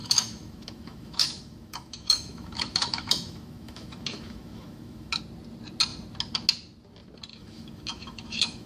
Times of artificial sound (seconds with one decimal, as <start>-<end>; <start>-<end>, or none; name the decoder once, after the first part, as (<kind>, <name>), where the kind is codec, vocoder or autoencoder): 0.0-5.2 (autoencoder, DAC-VAE); 7.3-8.7